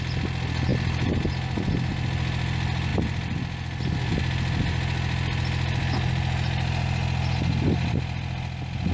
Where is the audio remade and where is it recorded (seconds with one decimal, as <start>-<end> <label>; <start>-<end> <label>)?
0.0-8.9 recorded